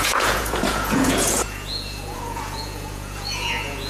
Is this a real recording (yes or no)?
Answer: no